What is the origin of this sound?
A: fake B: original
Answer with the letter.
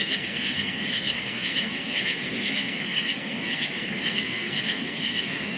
A